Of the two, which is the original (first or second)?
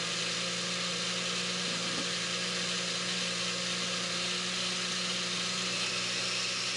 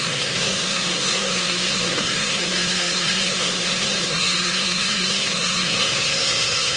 first